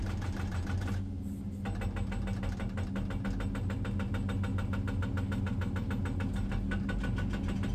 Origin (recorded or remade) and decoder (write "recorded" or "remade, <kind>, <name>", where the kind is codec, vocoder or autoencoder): recorded